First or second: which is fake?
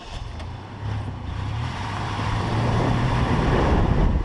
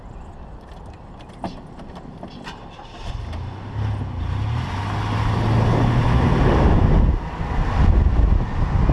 first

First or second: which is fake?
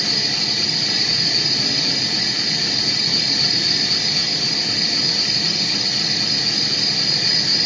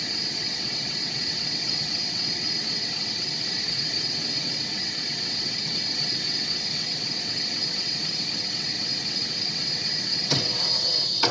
second